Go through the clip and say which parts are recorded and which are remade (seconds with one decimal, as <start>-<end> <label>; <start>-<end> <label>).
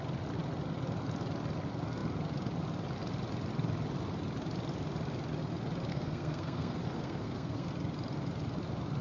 0.0-5.9 recorded; 5.9-7.7 remade; 7.7-9.0 recorded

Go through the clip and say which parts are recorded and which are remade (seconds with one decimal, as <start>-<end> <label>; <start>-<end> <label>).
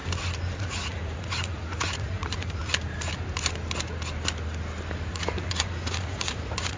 0.0-0.6 recorded; 0.6-2.6 remade; 2.6-5.1 recorded; 5.1-6.8 remade